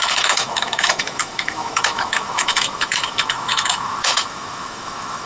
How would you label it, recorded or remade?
remade